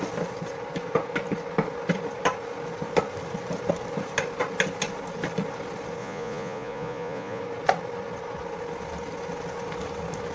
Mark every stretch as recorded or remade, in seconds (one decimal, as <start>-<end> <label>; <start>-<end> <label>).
0.0-6.0 recorded; 6.0-7.4 remade; 7.4-10.3 recorded